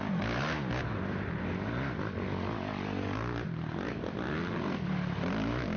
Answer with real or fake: real